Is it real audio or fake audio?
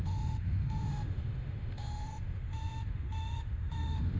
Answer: fake